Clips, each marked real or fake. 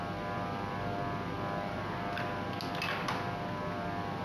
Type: real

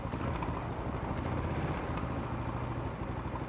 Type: real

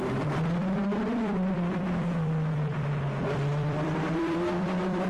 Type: fake